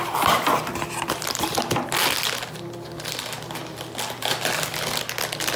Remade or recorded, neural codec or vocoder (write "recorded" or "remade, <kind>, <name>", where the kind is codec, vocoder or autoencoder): recorded